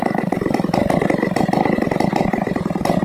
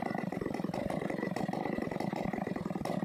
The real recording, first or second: first